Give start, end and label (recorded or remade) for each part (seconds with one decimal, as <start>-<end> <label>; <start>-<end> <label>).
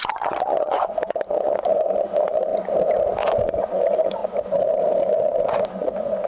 0.0-2.5 remade; 2.5-3.4 recorded; 3.4-4.2 remade; 4.2-5.0 recorded; 5.0-6.3 remade